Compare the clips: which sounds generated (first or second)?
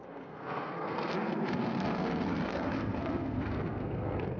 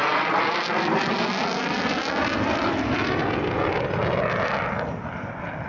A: first